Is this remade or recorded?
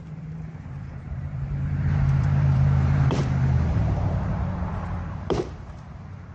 remade